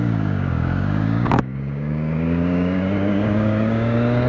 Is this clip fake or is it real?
fake